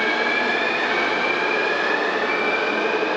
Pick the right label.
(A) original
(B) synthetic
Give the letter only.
A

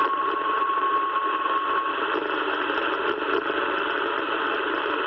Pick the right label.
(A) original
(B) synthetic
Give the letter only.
A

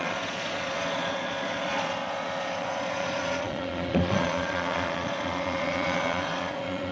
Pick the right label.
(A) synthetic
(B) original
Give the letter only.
A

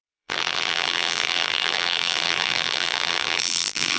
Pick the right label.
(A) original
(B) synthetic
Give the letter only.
B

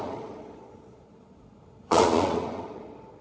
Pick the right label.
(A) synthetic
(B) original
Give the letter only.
A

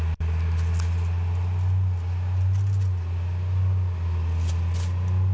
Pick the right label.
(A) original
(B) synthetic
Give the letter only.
A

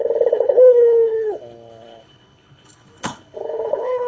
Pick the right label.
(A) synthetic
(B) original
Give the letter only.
A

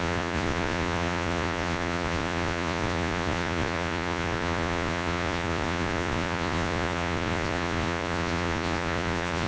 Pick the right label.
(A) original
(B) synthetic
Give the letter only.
B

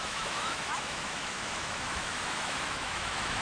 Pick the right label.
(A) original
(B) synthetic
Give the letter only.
B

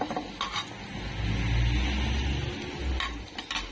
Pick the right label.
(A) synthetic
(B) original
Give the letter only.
B